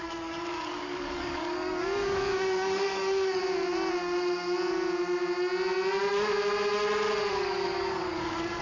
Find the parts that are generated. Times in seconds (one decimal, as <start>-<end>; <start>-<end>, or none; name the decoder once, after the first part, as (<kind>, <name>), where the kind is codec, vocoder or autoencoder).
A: 0.0-3.4 (codec, DAC); 7.3-8.6